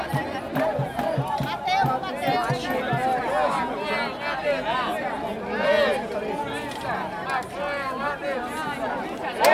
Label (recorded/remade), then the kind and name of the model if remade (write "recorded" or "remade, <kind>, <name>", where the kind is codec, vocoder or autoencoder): recorded